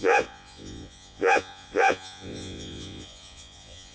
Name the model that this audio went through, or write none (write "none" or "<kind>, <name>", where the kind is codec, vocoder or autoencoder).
vocoder, Vocos